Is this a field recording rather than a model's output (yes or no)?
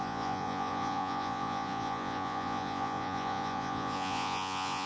no